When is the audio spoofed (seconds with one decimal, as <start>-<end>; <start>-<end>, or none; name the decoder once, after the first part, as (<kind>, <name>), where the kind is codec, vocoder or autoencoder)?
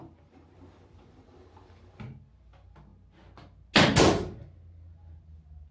none